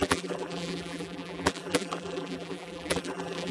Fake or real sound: fake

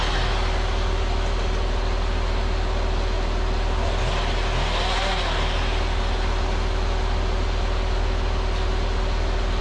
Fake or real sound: real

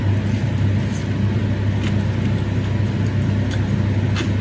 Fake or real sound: real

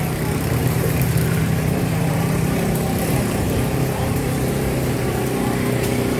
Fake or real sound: fake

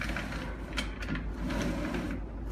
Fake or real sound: real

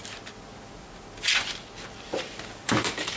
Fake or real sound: real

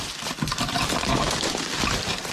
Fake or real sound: real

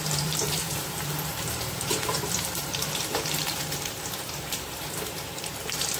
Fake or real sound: fake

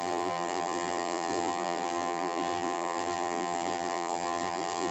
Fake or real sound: fake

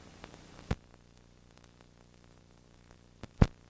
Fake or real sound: fake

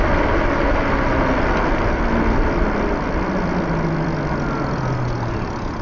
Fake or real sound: real